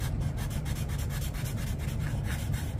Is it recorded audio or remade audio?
recorded